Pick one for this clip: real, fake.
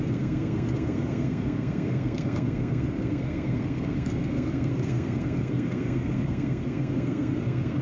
fake